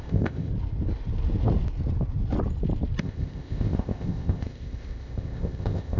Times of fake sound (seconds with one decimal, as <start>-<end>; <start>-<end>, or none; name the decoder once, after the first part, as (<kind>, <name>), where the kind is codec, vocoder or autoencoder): 0.0-0.5 (codec, ZipCodec); 3.0-6.0